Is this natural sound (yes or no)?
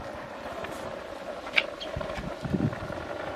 yes